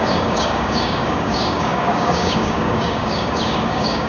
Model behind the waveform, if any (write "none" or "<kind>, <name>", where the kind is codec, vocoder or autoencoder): codec, DAC